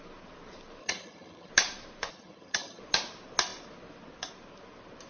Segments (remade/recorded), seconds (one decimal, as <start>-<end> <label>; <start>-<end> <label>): 0.0-0.8 recorded; 0.8-1.5 remade; 1.5-2.1 recorded; 2.1-2.8 remade; 2.8-5.1 recorded